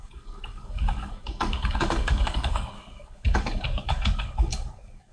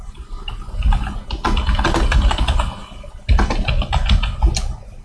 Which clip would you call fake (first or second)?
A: first